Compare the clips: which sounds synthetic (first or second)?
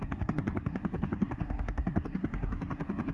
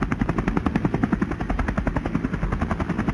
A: first